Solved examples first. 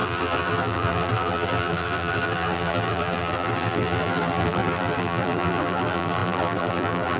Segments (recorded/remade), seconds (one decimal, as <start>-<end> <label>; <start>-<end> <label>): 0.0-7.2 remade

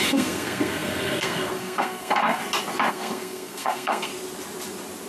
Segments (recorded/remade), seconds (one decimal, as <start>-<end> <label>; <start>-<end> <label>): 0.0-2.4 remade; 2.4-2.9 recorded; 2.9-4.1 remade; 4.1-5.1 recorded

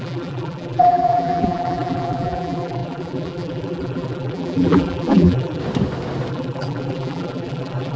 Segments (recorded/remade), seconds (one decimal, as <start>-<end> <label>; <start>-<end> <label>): 0.0-5.6 remade; 5.6-6.3 recorded; 6.3-8.0 remade

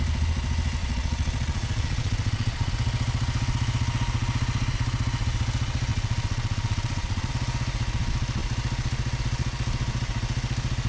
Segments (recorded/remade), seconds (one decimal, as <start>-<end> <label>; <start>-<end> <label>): 0.0-0.8 recorded; 0.8-2.7 remade; 2.7-5.9 recorded; 5.9-7.3 remade; 7.3-10.9 recorded

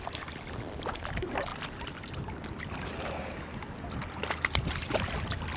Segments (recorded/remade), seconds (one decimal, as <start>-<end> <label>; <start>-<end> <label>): 0.0-5.6 recorded

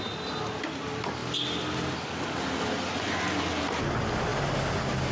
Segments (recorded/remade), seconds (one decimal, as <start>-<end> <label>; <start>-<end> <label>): 0.0-5.1 recorded

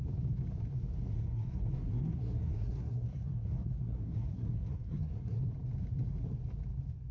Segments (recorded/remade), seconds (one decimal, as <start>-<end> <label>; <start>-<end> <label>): 0.0-1.1 recorded; 1.1-5.4 remade; 5.4-7.1 recorded

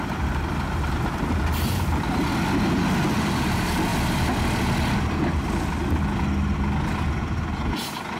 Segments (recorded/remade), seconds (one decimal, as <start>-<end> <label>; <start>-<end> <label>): 0.0-8.2 recorded